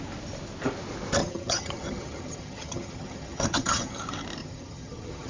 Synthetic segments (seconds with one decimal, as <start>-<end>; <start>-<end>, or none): 1.2-4.0; 4.4-5.3